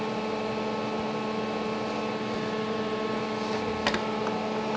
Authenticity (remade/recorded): recorded